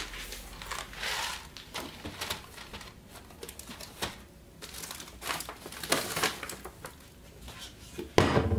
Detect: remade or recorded recorded